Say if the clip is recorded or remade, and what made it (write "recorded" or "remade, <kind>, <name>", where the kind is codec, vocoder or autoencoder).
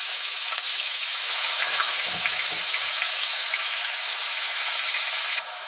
remade, autoencoder, DAC-VAE